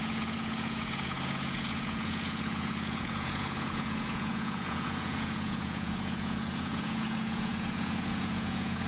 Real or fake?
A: fake